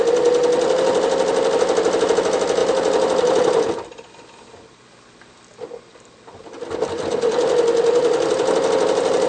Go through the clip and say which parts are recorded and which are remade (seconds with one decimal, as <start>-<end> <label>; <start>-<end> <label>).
0.0-2.6 recorded; 2.6-3.7 remade; 3.7-9.3 recorded